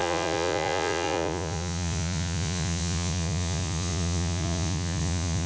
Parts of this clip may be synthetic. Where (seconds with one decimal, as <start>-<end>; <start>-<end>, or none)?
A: 0.0-5.5